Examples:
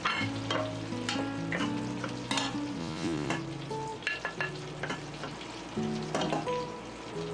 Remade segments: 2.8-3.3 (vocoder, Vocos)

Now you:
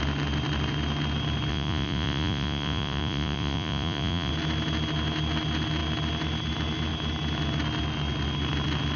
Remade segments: 1.5-4.3 (vocoder, Vocos)

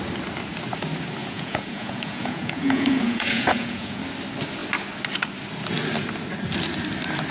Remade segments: 1.2-4.0 (vocoder, Vocos)